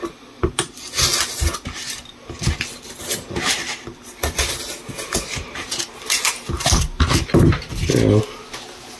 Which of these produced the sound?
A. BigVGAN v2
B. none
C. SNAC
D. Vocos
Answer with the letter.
B